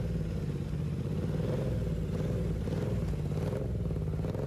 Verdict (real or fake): real